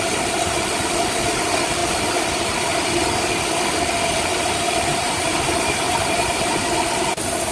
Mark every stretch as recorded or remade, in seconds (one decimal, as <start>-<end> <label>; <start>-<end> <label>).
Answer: 0.0-4.9 recorded; 4.9-6.5 remade; 6.5-7.5 recorded